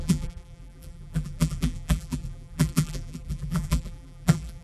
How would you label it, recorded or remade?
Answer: remade